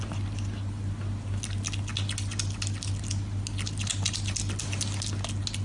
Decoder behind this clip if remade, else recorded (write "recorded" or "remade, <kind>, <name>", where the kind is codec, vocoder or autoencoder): recorded